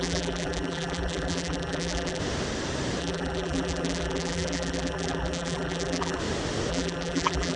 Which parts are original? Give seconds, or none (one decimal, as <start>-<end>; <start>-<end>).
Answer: 2.2-3.0; 6.2-6.7